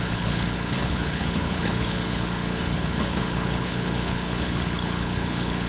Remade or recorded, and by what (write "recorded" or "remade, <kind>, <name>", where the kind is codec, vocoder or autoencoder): remade, codec, HILCodec